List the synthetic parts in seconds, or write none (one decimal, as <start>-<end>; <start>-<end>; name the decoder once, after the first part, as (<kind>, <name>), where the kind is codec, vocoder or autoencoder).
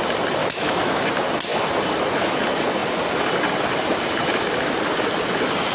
0.4-1.1 (autoencoder, DAC-VAE)